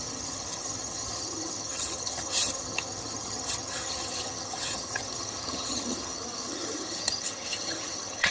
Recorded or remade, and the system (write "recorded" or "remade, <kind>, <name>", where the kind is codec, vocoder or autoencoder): remade, vocoder, HiFi-GAN